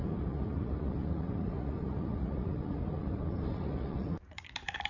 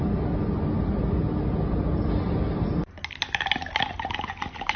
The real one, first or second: second